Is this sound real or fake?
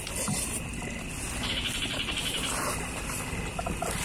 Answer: real